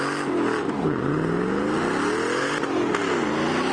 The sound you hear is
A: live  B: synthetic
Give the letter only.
A